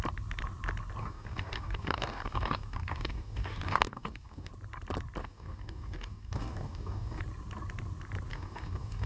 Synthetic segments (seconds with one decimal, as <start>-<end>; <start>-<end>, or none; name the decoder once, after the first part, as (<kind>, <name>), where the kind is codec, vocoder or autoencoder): 1.0-4.5 (codec, DAC); 5.2-7.2; 8.3-9.1